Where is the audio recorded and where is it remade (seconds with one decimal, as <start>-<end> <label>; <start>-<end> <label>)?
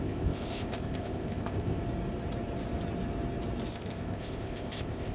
0.0-1.8 remade; 1.8-3.7 recorded; 3.7-5.1 remade